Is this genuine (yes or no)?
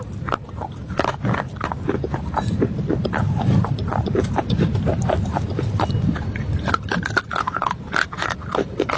yes